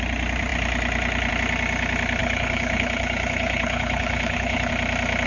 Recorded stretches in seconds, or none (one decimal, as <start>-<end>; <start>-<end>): 0.0-2.2; 4.7-5.3

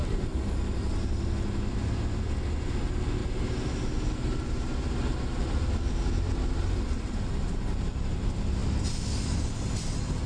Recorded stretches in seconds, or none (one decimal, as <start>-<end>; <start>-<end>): 0.0-10.3

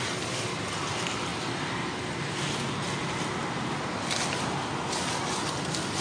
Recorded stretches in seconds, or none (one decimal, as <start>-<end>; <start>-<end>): 0.0-6.0

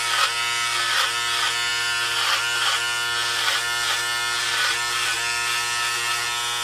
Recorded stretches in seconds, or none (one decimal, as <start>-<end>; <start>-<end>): 0.0-6.6